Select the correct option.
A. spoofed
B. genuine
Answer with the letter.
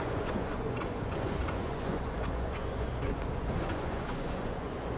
A